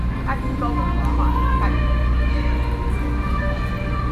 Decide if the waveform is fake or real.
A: real